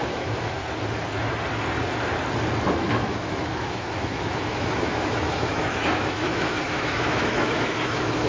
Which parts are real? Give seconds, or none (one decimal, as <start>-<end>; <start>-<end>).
0.6-2.7